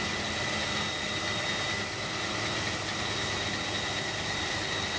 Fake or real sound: real